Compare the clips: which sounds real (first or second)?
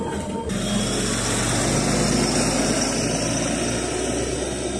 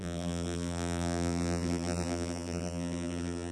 first